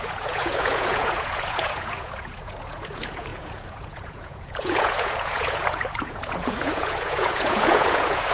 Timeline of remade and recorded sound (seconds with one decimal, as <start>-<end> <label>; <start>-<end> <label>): 0.0-8.3 remade

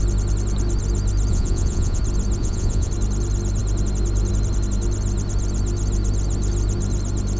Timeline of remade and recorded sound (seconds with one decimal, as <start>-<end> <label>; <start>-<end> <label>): 0.0-1.3 recorded; 1.3-2.0 remade; 2.0-2.4 recorded; 2.4-2.9 remade; 2.9-7.4 recorded

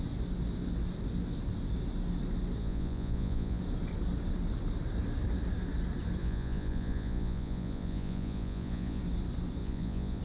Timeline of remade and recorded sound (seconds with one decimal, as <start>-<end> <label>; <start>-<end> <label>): 0.0-2.6 recorded; 2.6-3.6 remade; 3.6-6.2 recorded; 6.2-9.0 remade; 9.0-9.6 recorded; 9.6-10.2 remade

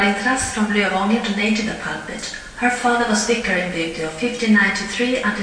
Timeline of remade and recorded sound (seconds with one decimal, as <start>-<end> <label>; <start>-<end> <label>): 0.0-0.4 recorded; 0.4-1.4 remade; 1.4-2.8 recorded; 2.8-4.1 remade; 4.1-5.4 recorded

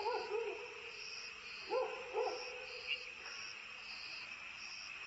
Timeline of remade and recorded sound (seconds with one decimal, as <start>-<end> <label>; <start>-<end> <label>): 0.0-5.1 recorded

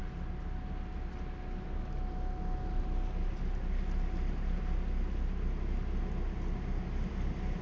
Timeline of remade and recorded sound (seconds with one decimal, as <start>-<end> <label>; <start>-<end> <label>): 0.0-7.6 recorded

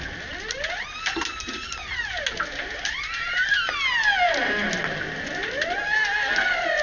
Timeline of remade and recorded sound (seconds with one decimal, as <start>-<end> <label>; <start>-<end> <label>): 0.0-6.8 recorded